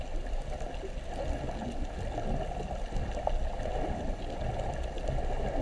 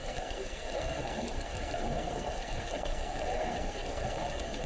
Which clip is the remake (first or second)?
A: second